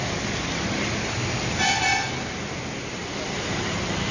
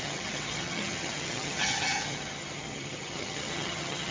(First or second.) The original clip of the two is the first